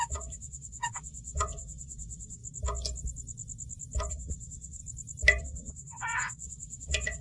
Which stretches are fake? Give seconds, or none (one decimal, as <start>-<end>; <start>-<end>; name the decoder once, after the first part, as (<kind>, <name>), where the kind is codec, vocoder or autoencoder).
0.0-2.4 (vocoder, WaveNeXt); 4.1-4.8; 5.4-7.2

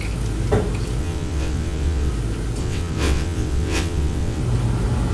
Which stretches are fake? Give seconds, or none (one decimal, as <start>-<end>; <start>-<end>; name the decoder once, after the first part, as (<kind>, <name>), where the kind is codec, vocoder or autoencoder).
1.0-2.1 (vocoder, WaveNeXt); 2.6-4.4

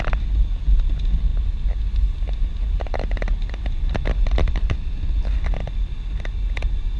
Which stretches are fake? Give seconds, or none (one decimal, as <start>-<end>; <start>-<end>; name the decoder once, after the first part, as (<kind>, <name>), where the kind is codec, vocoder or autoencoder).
none

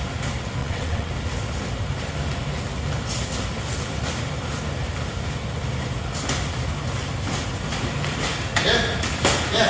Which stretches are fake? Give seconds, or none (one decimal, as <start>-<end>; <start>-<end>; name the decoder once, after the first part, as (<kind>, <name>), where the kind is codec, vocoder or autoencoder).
0.6-1.1 (vocoder, WaveNeXt)